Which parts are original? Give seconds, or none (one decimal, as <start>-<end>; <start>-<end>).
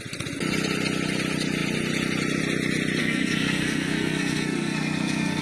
0.0-3.0